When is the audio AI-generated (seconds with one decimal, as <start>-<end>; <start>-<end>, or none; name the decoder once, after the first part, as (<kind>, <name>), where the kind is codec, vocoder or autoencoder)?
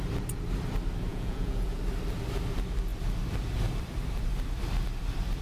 1.1-1.8 (vocoder, Vocos)